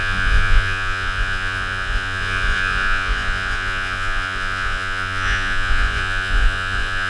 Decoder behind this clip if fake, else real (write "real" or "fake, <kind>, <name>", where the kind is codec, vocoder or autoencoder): fake, vocoder, Vocos